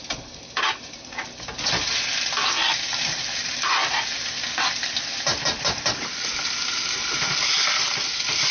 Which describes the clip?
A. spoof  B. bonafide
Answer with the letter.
B